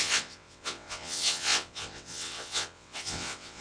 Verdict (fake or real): fake